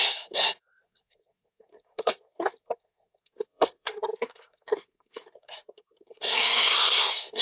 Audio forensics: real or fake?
fake